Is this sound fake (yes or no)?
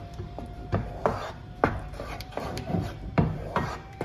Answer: yes